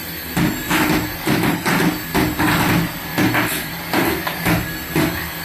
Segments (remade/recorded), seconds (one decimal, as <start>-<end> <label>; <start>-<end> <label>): 0.0-3.1 recorded; 3.1-3.8 remade; 3.8-5.4 recorded